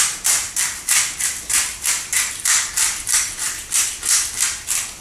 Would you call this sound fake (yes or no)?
yes